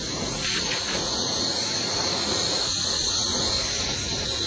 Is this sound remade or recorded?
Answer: remade